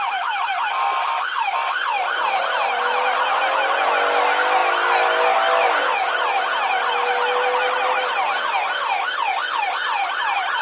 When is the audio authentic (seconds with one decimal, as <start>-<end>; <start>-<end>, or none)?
0.0-10.6